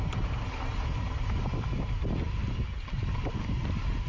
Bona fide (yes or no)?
yes